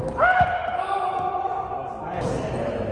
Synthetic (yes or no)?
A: no